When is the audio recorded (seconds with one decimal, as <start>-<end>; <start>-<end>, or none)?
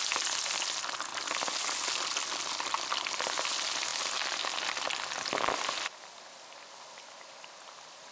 0.0-8.1